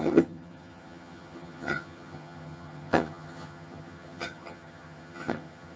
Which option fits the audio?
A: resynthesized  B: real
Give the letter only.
A